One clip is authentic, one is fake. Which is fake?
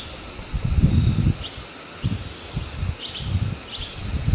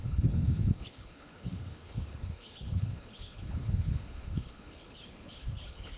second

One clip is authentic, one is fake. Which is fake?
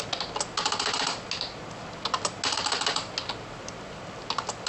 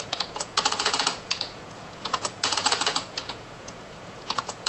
second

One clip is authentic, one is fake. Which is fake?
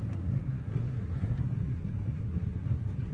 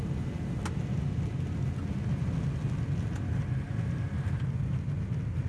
first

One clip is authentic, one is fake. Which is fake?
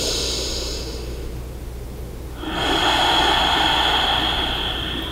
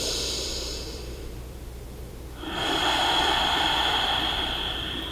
second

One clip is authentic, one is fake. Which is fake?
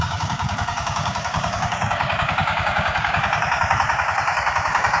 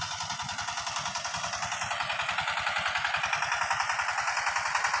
first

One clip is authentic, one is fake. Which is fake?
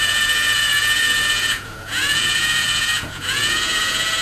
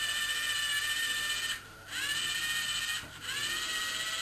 first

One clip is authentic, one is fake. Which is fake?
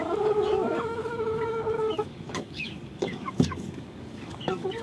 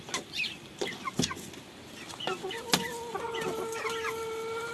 first